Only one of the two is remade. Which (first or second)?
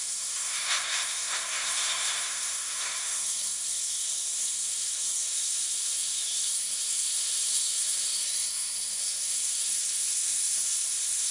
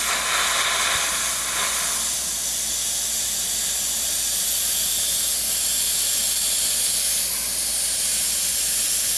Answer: first